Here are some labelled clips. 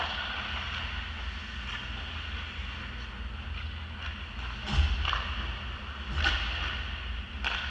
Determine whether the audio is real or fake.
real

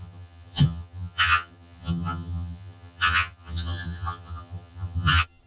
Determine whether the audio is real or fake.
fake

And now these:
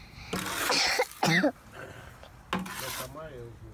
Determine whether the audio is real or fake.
real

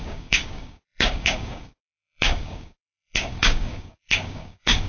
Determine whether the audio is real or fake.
fake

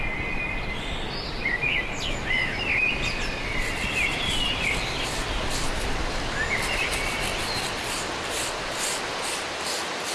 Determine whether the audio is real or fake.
real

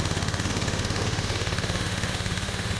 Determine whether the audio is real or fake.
fake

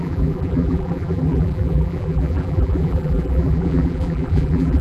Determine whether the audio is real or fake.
fake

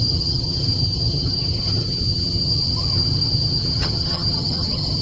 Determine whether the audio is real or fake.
fake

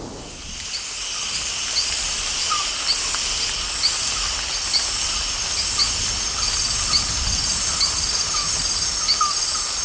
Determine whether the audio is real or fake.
real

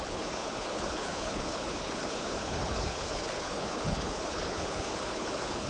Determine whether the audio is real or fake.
fake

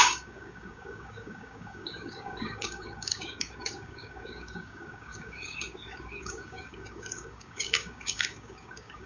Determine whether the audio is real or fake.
fake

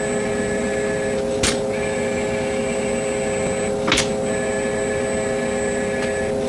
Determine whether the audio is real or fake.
real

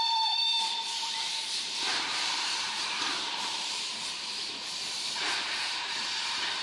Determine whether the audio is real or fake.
fake